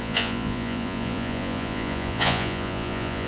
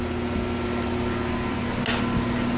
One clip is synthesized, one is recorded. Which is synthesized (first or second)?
first